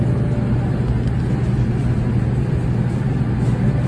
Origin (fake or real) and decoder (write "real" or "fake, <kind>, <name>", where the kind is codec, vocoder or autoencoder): real